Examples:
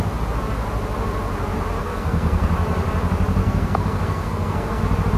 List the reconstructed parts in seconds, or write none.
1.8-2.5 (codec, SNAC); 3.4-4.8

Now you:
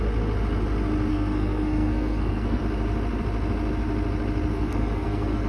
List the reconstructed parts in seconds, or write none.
1.1-2.6 (codec, SNAC); 4.5-5.5

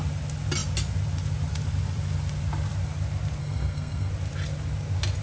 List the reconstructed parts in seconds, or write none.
3.4-4.1 (codec, SNAC)

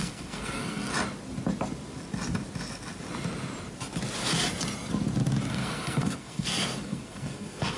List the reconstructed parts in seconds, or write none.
0.0-0.9 (codec, SNAC); 5.5-7.8

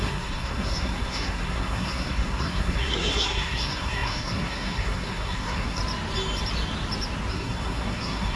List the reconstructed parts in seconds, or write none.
0.0-5.8 (codec, SNAC); 7.3-8.4